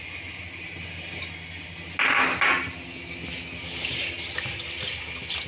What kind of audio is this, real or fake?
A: real